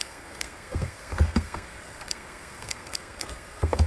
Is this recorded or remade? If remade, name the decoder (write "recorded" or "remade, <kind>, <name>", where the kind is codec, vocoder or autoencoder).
remade, codec, SNAC